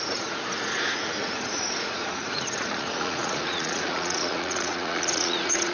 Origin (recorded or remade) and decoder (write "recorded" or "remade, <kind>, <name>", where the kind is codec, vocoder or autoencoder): remade, vocoder, Vocos